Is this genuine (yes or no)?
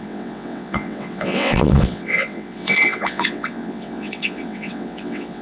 no